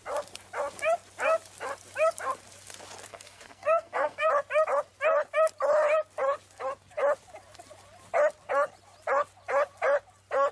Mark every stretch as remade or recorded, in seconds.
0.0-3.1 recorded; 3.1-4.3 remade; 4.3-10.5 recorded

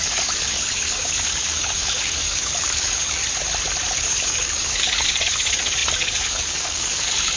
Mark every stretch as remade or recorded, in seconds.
0.0-3.2 remade; 3.2-3.9 recorded; 3.9-7.4 remade

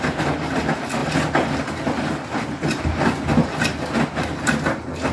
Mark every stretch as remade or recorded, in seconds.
0.0-5.1 recorded

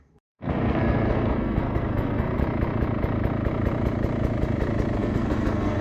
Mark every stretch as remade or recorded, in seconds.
0.0-2.4 remade; 2.4-5.0 recorded; 5.0-5.8 remade